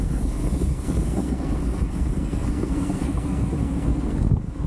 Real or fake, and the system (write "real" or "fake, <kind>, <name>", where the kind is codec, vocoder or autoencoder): fake, codec, SNAC